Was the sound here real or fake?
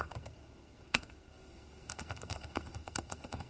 fake